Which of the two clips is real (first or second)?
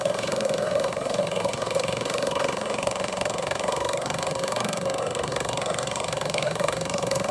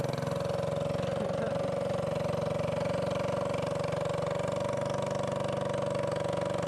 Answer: second